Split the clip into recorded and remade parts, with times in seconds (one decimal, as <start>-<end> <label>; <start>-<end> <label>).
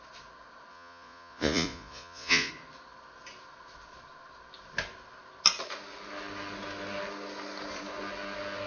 0.0-0.7 recorded; 0.7-2.5 remade; 2.5-8.7 recorded